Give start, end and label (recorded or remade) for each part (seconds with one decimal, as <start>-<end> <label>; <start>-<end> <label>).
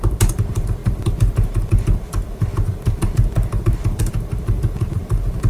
0.0-5.5 remade